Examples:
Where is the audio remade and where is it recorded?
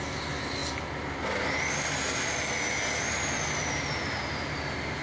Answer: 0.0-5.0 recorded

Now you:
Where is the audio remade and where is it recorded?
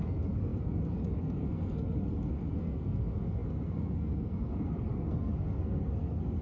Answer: 0.0-6.4 remade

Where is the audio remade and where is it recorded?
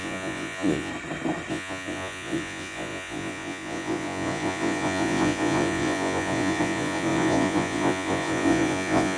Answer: 0.0-0.9 remade; 0.9-1.5 recorded; 1.5-9.2 remade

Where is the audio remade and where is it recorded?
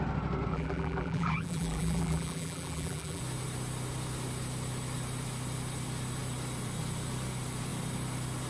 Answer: 0.0-0.5 recorded; 0.5-3.2 remade; 3.2-8.5 recorded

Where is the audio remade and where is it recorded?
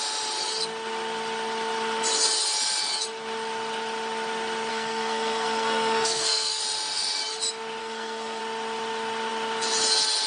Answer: 0.0-4.7 recorded; 4.7-6.6 remade; 6.6-7.8 recorded; 7.8-8.4 remade; 8.4-10.3 recorded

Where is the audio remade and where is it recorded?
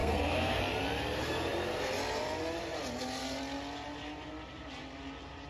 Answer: 0.0-0.6 remade; 0.6-5.5 recorded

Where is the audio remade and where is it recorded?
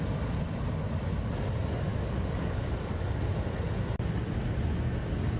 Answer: 0.0-1.9 recorded; 1.9-3.0 remade; 3.0-5.4 recorded